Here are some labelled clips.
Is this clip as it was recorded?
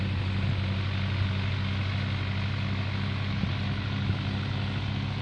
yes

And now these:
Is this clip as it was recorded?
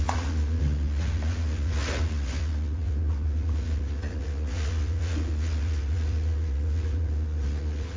no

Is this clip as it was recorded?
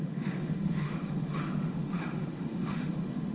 no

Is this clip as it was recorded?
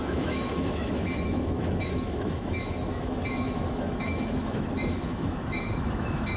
no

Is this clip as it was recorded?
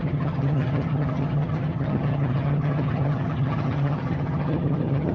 no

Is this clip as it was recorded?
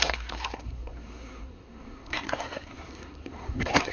no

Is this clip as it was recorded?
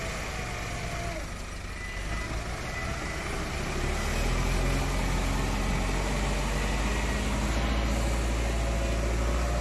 yes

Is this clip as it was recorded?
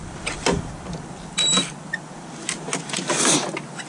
yes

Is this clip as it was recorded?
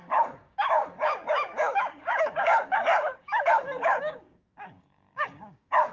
no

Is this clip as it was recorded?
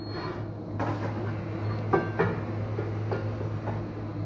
yes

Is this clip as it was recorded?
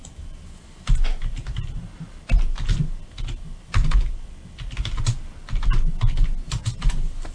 yes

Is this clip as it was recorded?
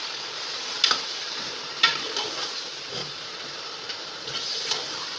no